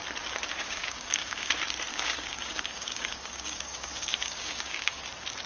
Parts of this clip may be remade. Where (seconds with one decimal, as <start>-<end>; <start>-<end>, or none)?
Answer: 0.5-1.5; 1.9-5.0